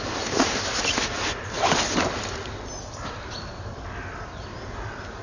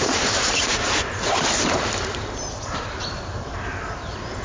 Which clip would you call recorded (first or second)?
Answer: first